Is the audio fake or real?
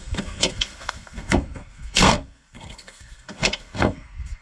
fake